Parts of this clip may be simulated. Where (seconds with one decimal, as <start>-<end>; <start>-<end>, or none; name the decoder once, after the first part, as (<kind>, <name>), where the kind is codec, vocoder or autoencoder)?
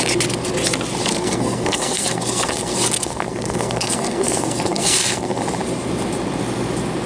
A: 1.1-5.4 (codec, SNAC)